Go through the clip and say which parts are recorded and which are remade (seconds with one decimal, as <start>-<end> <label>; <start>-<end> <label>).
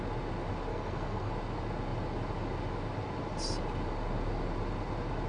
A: 0.0-0.7 recorded; 0.7-1.3 remade; 1.3-5.3 recorded